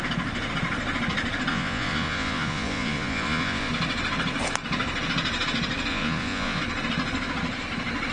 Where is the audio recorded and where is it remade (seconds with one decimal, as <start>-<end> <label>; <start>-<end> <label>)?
0.0-1.5 recorded; 1.5-3.7 remade; 3.7-5.9 recorded; 5.9-6.6 remade; 6.6-8.1 recorded